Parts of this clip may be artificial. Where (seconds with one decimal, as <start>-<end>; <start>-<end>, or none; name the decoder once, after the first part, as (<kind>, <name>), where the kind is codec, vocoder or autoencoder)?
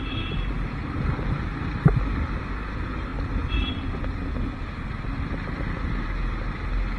none